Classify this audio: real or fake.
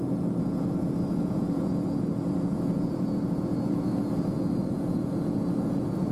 fake